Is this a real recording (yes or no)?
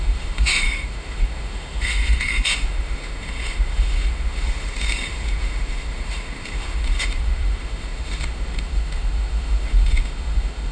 no